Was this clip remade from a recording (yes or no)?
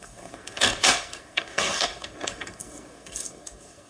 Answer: yes